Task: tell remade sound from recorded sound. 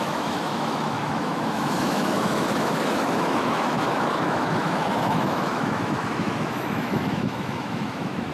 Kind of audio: remade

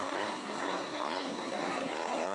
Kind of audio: remade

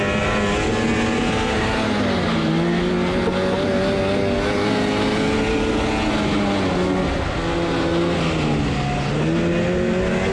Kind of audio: recorded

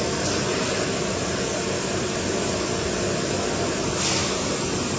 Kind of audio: recorded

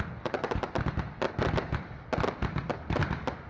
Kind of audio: recorded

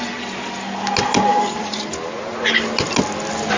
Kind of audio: recorded